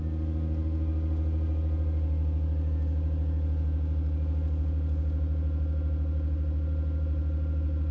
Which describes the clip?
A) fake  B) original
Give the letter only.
B